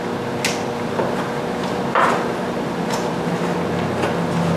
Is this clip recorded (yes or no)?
yes